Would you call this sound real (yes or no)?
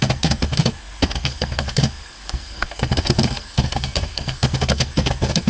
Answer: no